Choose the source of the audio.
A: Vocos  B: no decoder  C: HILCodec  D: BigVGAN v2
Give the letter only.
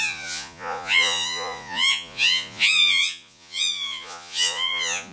A